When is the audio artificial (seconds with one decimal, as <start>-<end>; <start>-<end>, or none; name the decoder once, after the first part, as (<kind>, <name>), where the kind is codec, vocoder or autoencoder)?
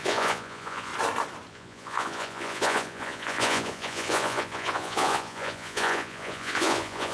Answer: 0.0-0.9 (vocoder, Vocos); 1.5-7.1